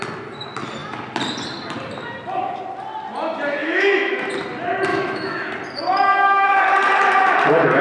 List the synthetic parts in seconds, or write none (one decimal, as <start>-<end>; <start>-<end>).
3.6-4.2; 4.9-5.5; 6.1-6.6